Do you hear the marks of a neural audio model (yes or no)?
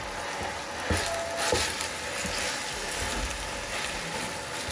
no